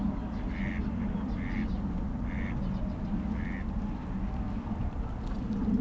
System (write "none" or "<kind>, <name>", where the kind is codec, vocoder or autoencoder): none